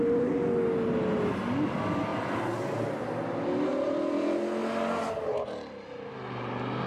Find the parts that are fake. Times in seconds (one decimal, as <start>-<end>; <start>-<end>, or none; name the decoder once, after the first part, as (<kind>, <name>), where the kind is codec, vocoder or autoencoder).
none